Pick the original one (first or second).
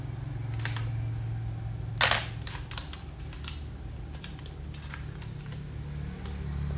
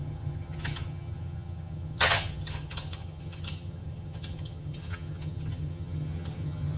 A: first